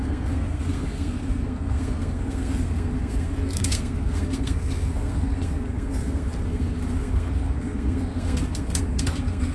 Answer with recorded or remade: remade